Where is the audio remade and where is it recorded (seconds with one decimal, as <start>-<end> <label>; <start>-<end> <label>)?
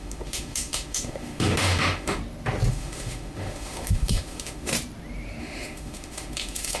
0.0-2.2 remade; 2.2-2.7 recorded; 2.7-4.7 remade; 4.7-5.4 recorded; 5.4-6.8 remade